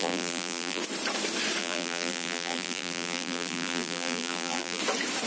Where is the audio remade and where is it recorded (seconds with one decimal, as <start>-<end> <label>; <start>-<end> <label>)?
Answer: 0.0-0.8 remade; 0.8-1.6 recorded; 1.6-4.8 remade; 4.8-5.3 recorded